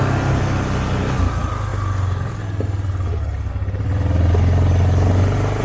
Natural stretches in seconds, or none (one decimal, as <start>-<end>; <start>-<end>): 0.0-5.6